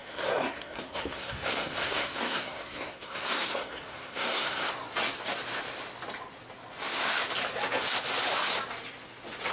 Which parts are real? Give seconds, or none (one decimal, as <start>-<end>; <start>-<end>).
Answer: 4.7-9.5